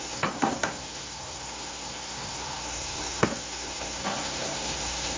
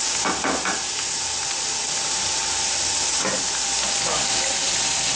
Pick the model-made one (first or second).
first